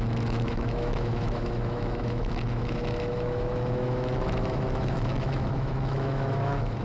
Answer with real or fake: fake